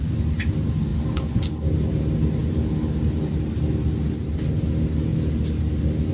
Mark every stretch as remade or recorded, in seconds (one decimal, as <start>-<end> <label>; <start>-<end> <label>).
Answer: 0.0-5.1 recorded; 5.1-6.1 remade